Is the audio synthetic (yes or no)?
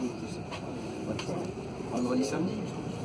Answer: yes